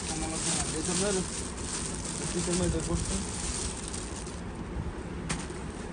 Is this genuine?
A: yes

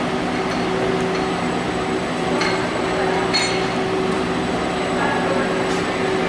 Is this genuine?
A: yes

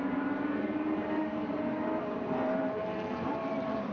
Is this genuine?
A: no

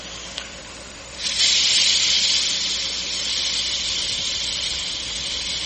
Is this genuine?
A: no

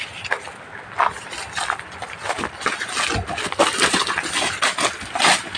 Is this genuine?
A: yes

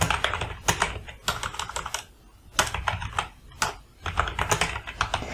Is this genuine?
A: yes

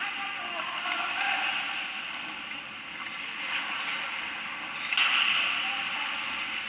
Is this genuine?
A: yes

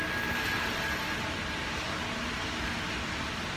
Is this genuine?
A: yes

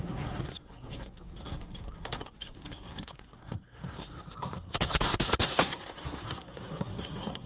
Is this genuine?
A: no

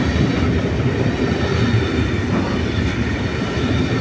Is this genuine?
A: yes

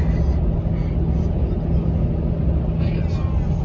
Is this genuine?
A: yes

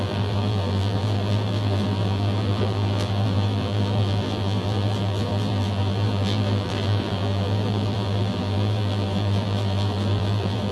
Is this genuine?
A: no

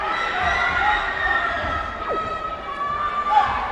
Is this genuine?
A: yes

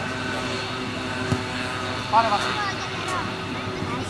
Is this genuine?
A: yes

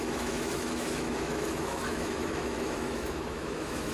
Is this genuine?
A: no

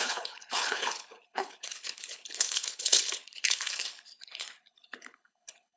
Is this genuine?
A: no